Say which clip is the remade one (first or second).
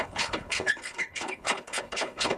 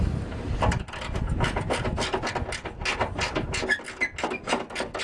first